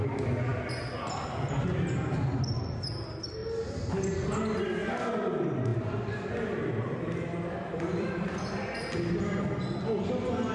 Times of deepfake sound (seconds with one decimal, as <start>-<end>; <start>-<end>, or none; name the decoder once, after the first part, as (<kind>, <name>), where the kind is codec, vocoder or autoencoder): 5.7-8.5 (vocoder, BigVGAN v2)